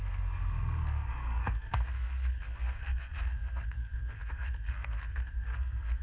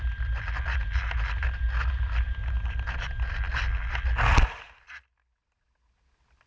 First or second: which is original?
second